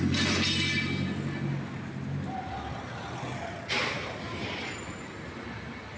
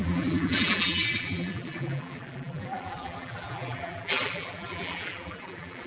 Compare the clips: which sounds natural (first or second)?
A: first